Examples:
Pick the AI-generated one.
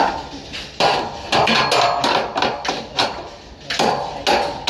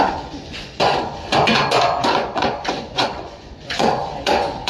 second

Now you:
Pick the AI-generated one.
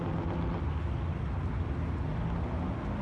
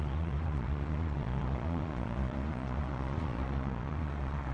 second